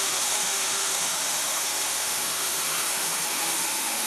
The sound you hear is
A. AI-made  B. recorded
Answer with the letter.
A